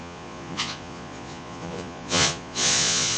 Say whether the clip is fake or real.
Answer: fake